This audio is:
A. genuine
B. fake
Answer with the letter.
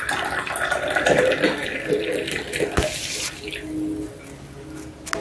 A